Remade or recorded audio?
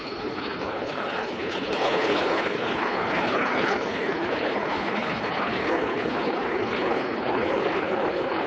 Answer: remade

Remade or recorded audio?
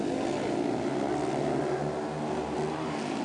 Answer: recorded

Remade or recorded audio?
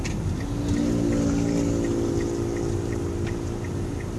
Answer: recorded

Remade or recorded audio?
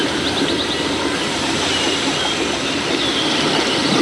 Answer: recorded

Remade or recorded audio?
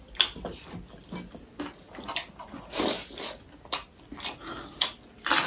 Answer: recorded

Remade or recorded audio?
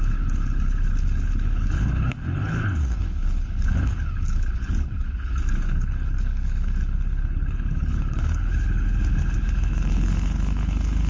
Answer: remade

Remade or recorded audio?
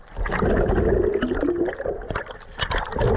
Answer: recorded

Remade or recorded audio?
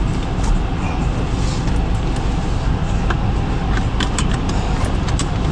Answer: recorded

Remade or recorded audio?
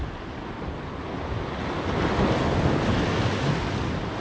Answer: recorded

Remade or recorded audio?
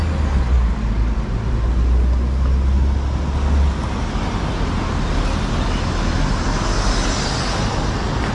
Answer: recorded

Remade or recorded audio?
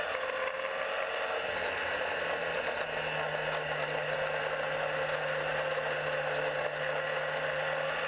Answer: recorded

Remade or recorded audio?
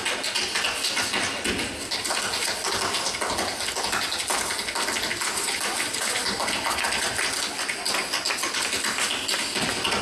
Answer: recorded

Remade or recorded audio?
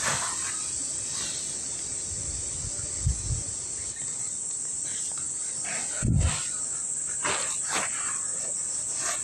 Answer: recorded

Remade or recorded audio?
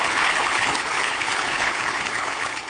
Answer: remade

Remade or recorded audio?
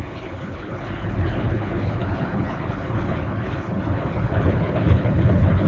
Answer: remade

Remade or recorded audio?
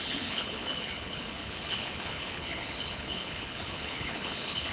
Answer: remade